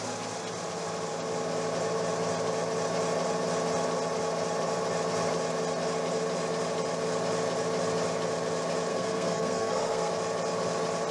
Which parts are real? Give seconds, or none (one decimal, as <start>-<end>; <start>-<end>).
0.0-8.9; 10.1-11.1